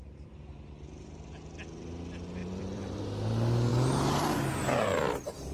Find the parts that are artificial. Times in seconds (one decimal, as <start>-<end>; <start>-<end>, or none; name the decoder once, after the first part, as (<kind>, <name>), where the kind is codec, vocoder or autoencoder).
0.0-0.5 (vocoder, BigVGAN v2); 2.4-3.0